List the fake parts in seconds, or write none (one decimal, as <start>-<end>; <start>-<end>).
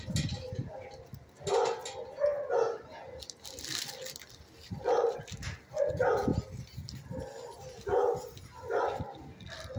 none